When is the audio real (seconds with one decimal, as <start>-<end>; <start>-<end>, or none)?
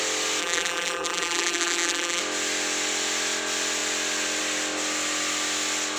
0.0-0.4; 2.2-6.0